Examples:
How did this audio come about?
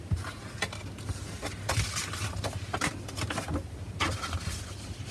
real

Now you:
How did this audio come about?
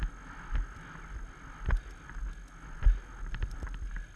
real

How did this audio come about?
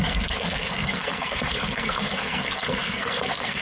fake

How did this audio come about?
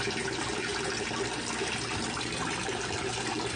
real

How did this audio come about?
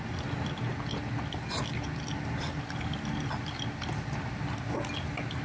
real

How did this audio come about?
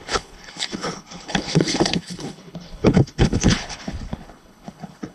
fake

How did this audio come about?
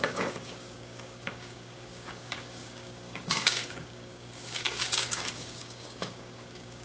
fake